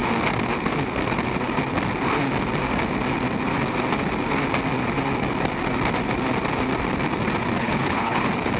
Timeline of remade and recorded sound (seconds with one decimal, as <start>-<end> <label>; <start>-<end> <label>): 0.0-7.6 recorded; 7.6-8.2 remade; 8.2-8.6 recorded